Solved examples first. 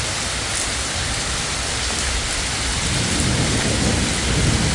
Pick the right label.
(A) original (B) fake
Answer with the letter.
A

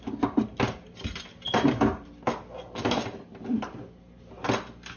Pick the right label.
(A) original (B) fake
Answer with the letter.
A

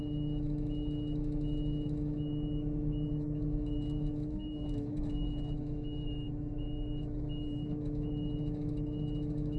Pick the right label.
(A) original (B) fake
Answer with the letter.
B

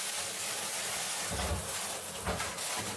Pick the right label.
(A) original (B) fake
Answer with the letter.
A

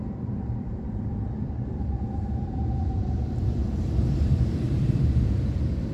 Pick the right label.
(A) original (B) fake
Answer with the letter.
B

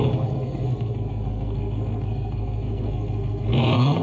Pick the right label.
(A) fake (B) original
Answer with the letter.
A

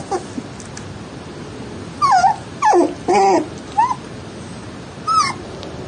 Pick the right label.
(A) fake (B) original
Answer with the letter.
B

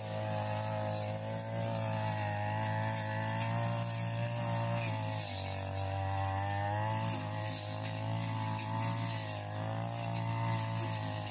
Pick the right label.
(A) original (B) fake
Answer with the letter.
A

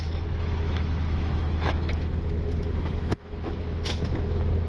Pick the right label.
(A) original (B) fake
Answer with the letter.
B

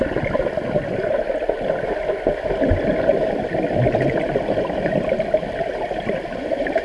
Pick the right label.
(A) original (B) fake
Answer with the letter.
A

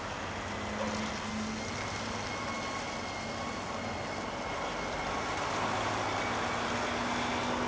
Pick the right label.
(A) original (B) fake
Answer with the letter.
A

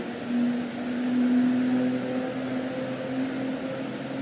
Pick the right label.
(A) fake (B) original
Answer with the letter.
B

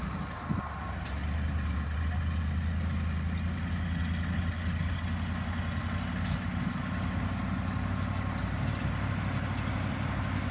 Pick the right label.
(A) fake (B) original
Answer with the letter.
B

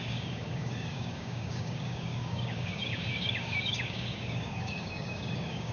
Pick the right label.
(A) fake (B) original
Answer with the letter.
A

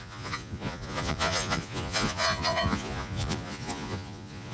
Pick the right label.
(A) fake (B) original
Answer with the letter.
A